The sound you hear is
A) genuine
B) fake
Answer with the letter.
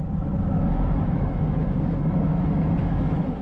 B